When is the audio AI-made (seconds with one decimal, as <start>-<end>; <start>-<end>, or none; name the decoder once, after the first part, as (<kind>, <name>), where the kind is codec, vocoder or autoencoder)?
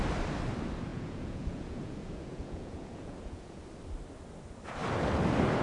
0.9-3.6 (vocoder, Vocos)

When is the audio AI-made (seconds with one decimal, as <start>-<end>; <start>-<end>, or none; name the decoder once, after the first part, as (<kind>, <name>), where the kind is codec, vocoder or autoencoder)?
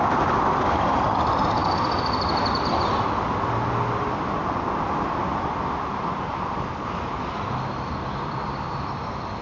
none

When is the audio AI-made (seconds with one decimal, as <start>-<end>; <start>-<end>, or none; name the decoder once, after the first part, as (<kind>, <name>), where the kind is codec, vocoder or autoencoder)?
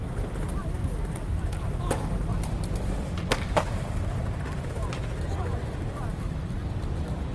0.6-1.8 (vocoder, BigVGAN v2); 2.3-6.7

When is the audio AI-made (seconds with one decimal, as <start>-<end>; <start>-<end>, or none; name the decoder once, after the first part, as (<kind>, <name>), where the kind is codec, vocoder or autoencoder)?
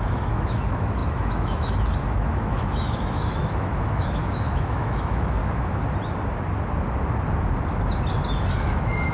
0.0-5.4 (autoencoder, DAC-VAE); 8.5-9.1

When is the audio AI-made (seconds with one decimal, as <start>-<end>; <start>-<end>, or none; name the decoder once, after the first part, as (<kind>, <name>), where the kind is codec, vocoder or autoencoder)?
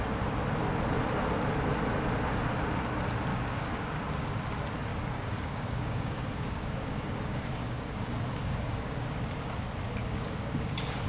3.3-4.0 (codec, DAC); 4.9-9.1; 10.0-11.1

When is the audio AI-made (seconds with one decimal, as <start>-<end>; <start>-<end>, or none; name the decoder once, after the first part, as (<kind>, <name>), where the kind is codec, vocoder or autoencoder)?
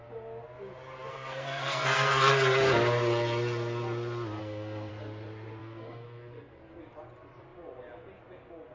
1.1-2.3 (codec, SNAC); 4.4-4.9; 5.6-6.8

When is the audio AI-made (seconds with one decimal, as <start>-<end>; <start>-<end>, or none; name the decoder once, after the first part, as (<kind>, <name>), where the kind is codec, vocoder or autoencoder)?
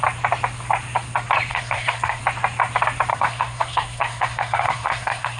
1.5-2.2 (codec, SNAC); 3.1-5.4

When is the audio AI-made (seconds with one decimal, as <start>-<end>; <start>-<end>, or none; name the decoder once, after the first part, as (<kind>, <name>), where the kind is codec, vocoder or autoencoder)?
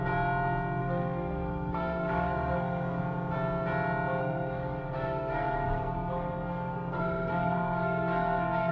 0.8-3.0 (codec, SNAC); 4.2-8.7